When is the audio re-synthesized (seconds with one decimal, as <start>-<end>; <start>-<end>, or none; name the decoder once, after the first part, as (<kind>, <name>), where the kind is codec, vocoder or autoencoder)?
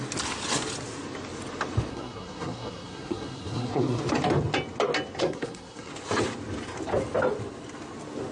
1.9-4.0 (codec, SNAC); 5.2-5.9